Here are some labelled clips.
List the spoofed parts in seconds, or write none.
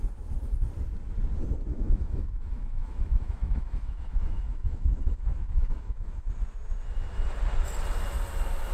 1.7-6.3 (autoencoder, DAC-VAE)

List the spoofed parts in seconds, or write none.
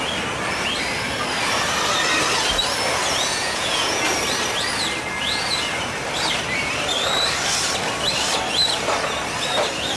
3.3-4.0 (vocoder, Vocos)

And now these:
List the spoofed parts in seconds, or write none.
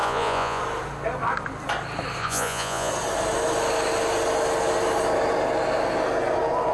0.0-0.6 (vocoder, Vocos); 2.2-2.9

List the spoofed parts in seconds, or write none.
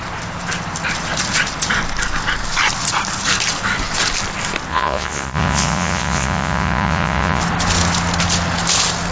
4.7-7.4 (vocoder, Vocos)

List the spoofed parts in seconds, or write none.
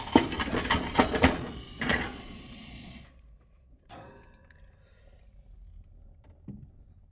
0.5-4.1 (vocoder, Vocos)